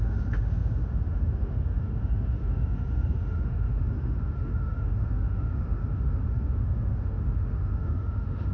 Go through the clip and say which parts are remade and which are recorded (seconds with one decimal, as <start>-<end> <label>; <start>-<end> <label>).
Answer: 0.0-8.5 remade